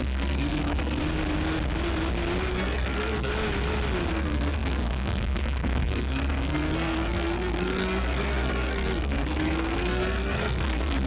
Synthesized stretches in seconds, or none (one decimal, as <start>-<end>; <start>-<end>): 0.0-1.0; 2.5-3.3; 4.1-11.1

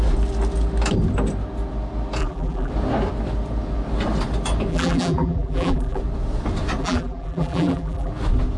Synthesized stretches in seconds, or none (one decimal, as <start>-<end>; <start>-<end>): 2.2-2.7; 4.7-6.0; 6.8-8.1

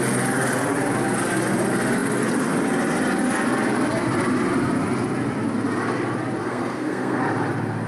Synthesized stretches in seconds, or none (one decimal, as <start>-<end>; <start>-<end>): 6.4-7.2

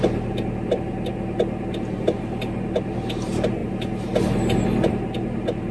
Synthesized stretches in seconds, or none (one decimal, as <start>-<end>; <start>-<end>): none

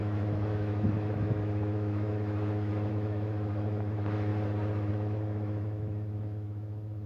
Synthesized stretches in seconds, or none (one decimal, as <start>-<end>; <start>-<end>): 0.0-4.3; 4.9-7.1